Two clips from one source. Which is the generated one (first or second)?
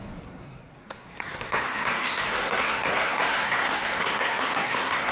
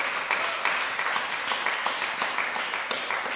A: first